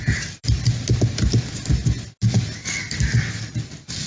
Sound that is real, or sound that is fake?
real